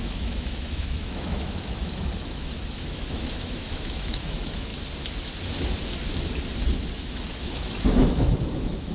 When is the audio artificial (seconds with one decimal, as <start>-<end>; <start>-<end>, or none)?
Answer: 0.0-4.7; 7.0-8.9